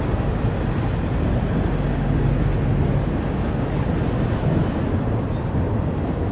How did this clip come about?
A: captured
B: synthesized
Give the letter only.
A